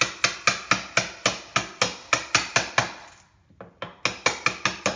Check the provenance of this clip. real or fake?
real